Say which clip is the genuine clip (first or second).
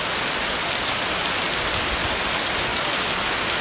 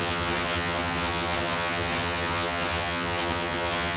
first